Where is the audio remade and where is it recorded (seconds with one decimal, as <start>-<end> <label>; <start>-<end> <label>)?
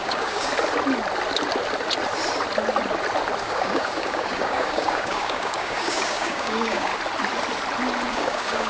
0.0-0.5 remade; 0.5-3.4 recorded; 3.4-6.9 remade; 6.9-8.1 recorded; 8.1-8.7 remade